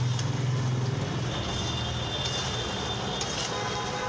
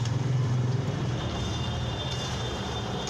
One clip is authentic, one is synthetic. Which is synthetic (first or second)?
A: second